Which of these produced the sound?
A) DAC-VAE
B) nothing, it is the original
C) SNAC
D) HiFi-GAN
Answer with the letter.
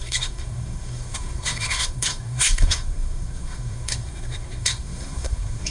C